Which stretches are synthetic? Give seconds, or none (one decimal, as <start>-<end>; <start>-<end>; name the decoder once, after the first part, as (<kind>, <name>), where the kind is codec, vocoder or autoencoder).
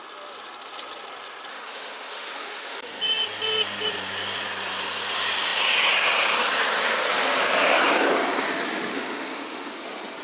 1.5-3.0 (autoencoder, DAC-VAE); 8.9-9.7